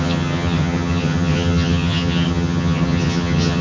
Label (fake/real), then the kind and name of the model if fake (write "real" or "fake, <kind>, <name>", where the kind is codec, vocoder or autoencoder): fake, vocoder, HiFi-GAN